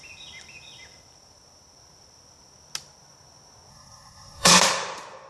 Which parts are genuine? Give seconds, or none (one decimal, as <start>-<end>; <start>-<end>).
0.0-3.7; 4.5-5.3